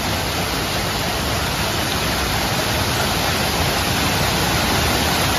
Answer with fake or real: real